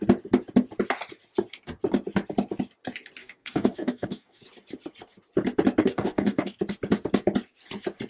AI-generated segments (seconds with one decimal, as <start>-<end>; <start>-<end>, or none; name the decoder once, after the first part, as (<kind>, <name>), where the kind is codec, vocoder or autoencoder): 3.2-4.4 (codec, DAC); 5.8-6.6